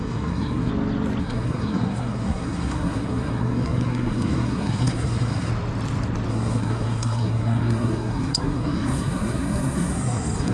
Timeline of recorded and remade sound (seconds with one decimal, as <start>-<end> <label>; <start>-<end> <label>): 0.0-0.7 remade; 0.7-1.2 recorded; 1.2-5.5 remade; 5.5-6.3 recorded; 6.3-10.5 remade